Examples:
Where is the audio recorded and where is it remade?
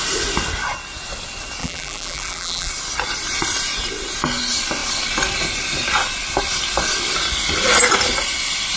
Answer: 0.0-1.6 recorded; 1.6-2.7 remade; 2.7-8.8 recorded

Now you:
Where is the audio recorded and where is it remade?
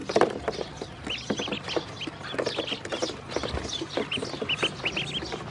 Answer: 0.0-5.5 recorded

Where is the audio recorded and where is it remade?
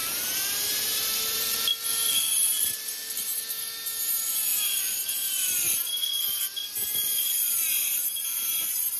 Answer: 0.0-1.6 remade; 1.6-9.0 recorded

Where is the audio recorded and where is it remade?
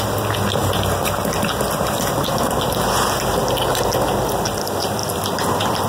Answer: 0.0-5.9 recorded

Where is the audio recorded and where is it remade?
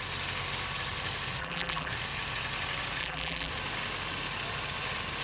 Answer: 0.0-1.4 recorded; 1.4-1.9 remade; 1.9-3.0 recorded; 3.0-3.5 remade; 3.5-5.2 recorded